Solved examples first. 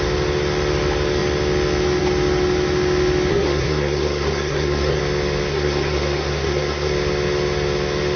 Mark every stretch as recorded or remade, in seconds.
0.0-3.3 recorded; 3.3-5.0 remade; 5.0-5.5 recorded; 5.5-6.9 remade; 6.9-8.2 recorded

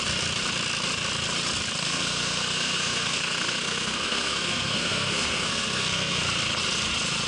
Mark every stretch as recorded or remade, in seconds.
0.0-1.8 recorded; 1.8-6.2 remade; 6.2-7.3 recorded

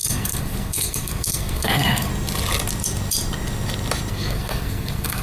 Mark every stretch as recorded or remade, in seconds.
0.0-2.1 remade; 2.1-4.1 recorded; 4.1-5.2 remade

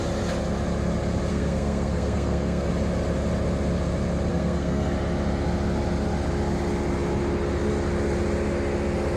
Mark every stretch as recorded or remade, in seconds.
0.0-1.3 recorded; 1.3-2.7 remade; 2.7-4.3 recorded; 4.3-4.9 remade; 4.9-9.2 recorded

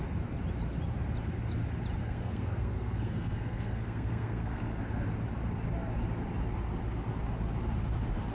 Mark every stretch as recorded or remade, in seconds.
0.0-2.0 recorded; 2.0-4.8 remade; 4.8-8.3 recorded

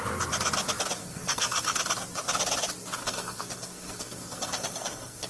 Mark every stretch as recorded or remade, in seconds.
0.0-1.0 recorded; 1.0-1.8 remade; 1.8-3.0 recorded; 3.0-5.3 remade

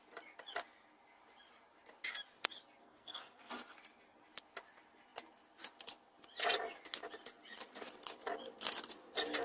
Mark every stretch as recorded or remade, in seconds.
0.0-2.8 recorded; 2.8-3.5 remade; 3.5-9.4 recorded